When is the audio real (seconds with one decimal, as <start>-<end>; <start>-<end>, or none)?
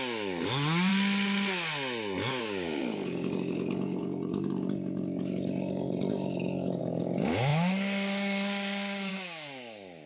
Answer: 0.9-2.4